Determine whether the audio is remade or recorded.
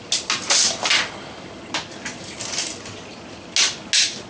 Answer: recorded